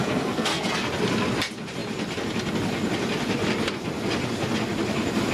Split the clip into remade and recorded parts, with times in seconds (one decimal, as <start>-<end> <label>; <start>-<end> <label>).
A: 0.0-0.6 remade; 0.6-5.3 recorded